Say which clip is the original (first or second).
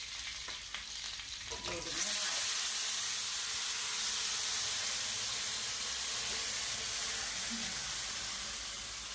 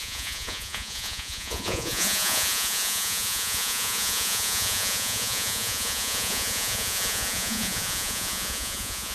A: first